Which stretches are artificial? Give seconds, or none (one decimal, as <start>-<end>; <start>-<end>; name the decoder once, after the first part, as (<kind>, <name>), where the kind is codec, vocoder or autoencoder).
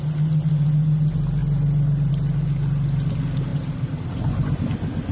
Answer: 3.5-4.6 (vocoder, BigVGAN v2)